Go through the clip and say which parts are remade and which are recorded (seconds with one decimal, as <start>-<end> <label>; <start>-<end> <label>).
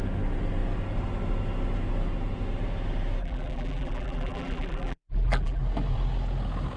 0.0-3.2 recorded; 3.2-5.6 remade; 5.6-6.8 recorded